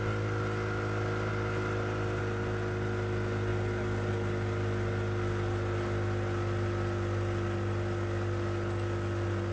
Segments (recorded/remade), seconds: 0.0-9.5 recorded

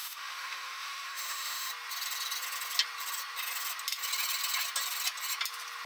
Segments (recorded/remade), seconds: 0.0-1.7 remade; 1.7-5.9 recorded

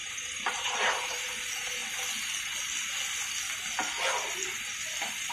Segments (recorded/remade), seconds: 0.0-1.8 remade; 1.8-5.3 recorded

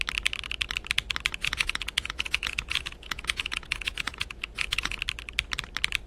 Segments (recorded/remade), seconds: 0.0-1.4 recorded; 1.4-5.0 remade; 5.0-6.1 recorded

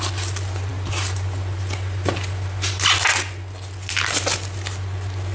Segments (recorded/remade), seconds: 0.0-5.3 recorded